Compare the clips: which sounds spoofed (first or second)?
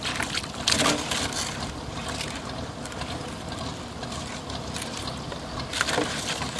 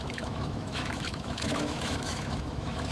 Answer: second